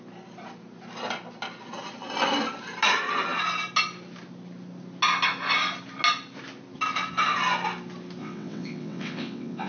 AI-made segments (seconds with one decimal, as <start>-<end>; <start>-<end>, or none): 8.2-9.7